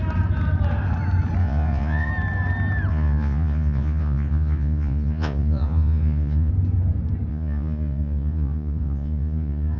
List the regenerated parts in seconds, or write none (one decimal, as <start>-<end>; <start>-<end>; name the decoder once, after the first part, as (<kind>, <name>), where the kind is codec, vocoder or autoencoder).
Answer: 1.4-2.1 (vocoder, Vocos); 2.9-6.5; 7.3-9.8